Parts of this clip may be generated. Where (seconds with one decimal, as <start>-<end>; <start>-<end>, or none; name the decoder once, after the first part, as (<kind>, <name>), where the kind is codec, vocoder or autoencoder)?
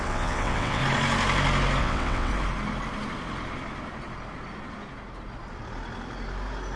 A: 0.0-0.8 (vocoder, WaveNeXt); 1.8-2.3